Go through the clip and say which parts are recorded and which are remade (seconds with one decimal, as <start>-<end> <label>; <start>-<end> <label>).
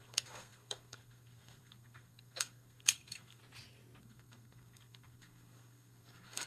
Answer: 0.0-3.4 remade; 3.4-4.0 recorded; 4.0-6.5 remade